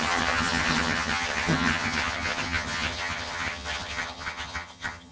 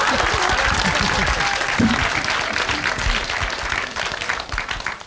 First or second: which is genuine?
second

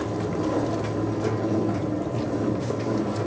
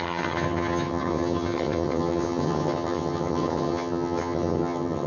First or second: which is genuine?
first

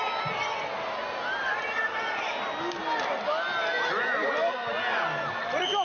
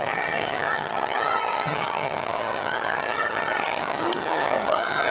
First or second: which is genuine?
first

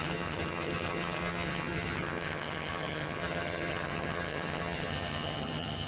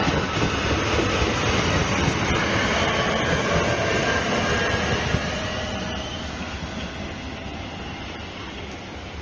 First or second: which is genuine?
second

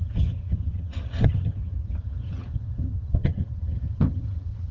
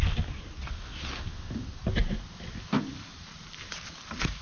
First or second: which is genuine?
second